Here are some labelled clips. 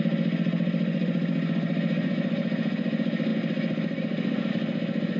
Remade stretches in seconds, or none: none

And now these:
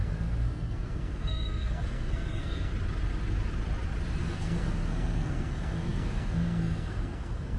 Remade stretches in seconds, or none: 0.0-2.7 (codec, SNAC); 4.2-7.6

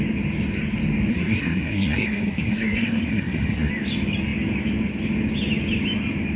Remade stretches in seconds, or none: 1.1-3.7 (codec, SNAC)